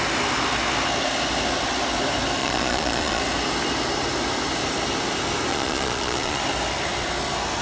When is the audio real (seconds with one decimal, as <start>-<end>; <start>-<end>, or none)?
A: 0.0-2.4; 3.2-5.5; 6.4-7.6